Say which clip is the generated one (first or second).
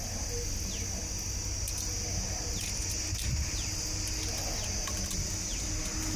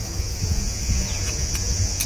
second